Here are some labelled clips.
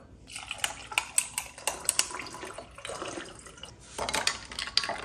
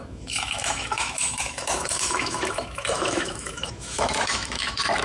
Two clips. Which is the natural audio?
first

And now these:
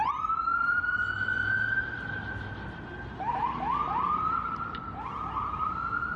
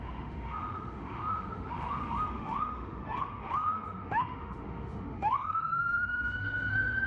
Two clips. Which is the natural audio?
first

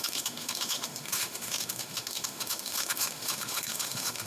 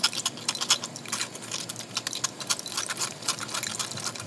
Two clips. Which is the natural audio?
second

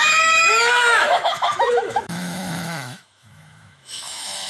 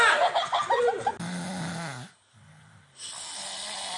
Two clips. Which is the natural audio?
second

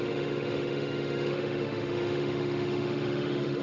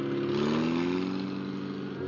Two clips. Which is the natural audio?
second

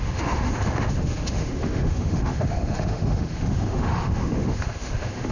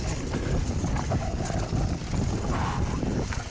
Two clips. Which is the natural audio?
second